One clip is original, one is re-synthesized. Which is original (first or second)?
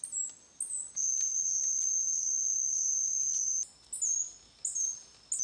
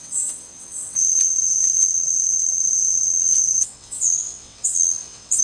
first